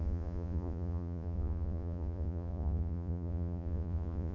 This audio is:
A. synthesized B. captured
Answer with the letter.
A